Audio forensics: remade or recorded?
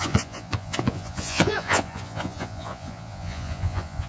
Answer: remade